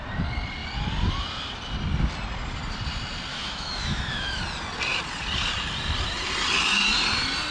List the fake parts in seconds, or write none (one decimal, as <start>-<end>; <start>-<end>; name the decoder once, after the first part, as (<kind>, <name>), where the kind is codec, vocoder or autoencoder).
3.3-4.4 (autoencoder, DAC-VAE)